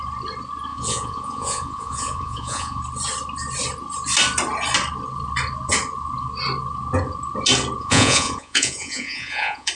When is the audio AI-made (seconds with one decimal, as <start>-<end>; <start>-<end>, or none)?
0.7-2.8; 7.8-9.7